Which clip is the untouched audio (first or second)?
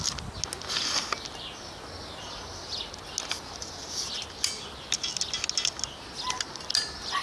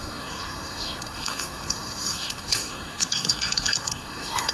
first